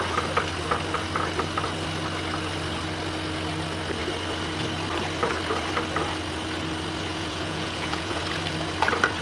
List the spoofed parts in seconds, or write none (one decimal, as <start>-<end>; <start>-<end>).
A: 7.1-8.2